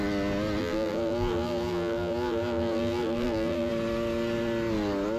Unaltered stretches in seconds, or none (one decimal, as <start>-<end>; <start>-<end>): 0.0-0.6; 3.7-5.2